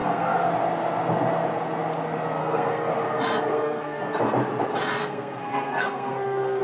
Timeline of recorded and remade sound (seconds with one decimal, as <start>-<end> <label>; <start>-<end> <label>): 0.0-0.5 remade; 0.5-2.4 recorded; 2.4-2.9 remade; 2.9-3.5 recorded; 3.5-4.0 remade; 4.0-5.0 recorded; 5.0-6.6 remade